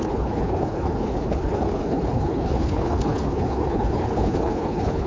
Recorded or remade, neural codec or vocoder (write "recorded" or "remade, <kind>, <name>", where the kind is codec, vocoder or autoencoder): remade, codec, HILCodec